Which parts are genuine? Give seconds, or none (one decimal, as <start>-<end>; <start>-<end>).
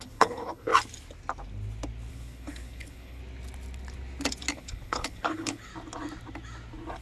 0.7-2.1; 3.2-4.5; 5.7-7.0